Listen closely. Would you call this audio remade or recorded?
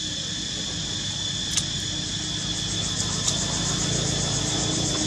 recorded